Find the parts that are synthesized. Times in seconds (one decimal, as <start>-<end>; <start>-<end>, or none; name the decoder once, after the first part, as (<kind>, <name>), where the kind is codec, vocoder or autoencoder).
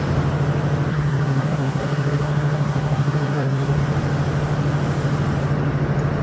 0.9-3.8 (codec, SNAC)